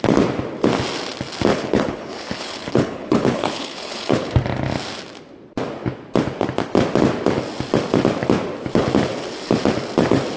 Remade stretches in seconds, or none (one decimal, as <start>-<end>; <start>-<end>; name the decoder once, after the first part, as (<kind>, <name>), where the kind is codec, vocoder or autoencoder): 1.5-4.3 (codec, HILCodec)